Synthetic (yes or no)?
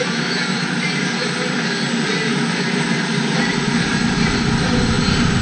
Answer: yes